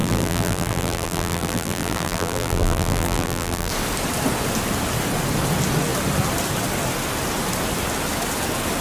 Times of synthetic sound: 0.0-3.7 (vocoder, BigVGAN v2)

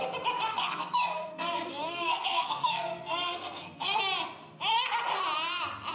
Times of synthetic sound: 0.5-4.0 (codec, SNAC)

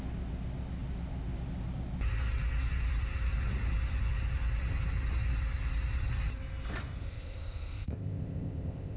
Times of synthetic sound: 7.0-9.0 (codec, ZipCodec)